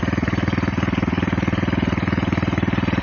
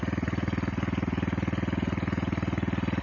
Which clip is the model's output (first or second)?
first